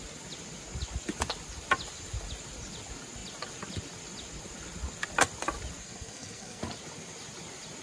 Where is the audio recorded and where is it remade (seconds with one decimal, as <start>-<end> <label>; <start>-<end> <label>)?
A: 0.0-5.8 recorded; 5.8-6.6 remade; 6.6-7.8 recorded